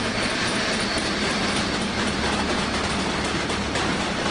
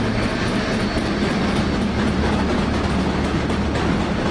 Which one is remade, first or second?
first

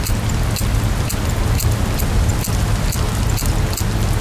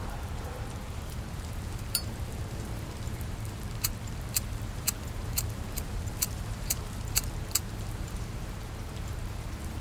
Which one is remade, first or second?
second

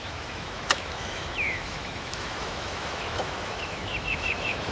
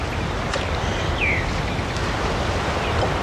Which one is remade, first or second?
first